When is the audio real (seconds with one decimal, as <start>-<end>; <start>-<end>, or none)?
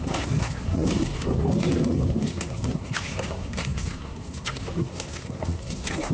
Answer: none